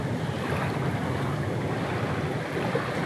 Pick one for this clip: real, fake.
real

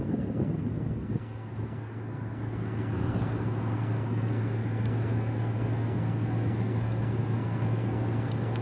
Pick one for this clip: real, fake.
fake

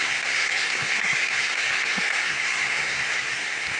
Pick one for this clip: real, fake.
fake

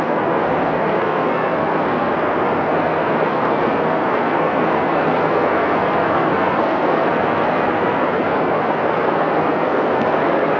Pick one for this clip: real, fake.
fake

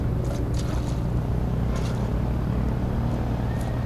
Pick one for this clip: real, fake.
real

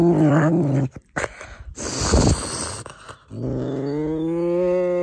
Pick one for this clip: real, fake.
real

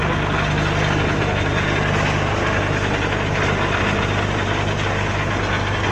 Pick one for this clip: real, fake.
real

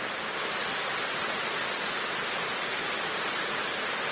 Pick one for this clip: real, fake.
real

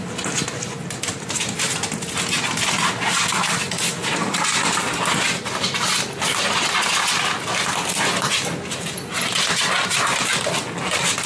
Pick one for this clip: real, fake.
real